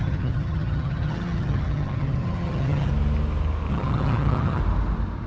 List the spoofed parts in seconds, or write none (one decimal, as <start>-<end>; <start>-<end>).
0.0-2.9; 3.7-4.6